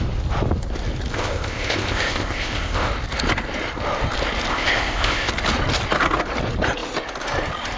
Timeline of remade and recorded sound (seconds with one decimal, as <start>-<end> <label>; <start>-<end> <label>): 0.0-1.1 recorded; 1.1-2.9 remade; 2.9-4.5 recorded; 4.5-5.3 remade; 5.3-7.8 recorded